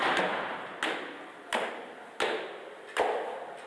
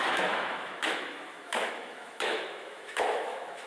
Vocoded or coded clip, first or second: second